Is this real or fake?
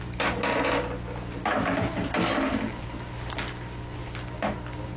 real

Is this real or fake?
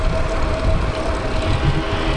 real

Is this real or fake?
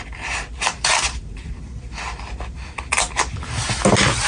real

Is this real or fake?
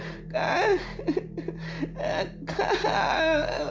real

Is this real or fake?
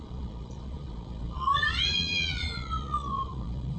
fake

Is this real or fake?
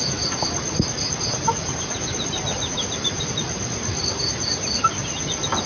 real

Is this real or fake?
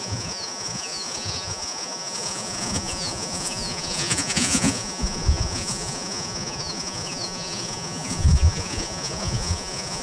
fake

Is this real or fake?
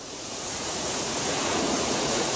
fake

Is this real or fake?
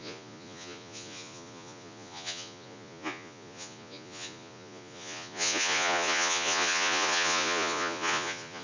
fake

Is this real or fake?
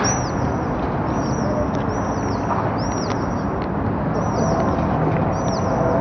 real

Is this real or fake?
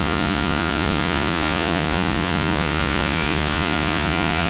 fake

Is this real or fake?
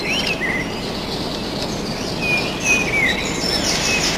real